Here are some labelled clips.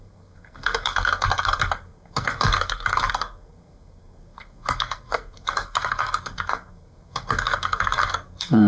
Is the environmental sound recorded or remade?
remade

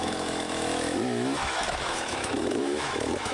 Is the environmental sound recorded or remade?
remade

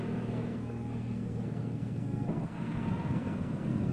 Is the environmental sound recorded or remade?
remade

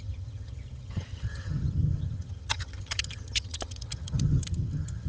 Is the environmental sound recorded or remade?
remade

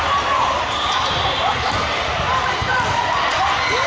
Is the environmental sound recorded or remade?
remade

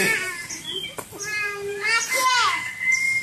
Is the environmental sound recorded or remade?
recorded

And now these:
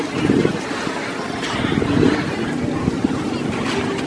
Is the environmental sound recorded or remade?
recorded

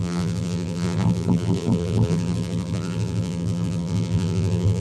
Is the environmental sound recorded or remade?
remade